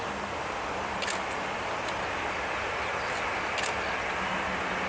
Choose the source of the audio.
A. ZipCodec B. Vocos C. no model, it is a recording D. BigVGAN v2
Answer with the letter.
C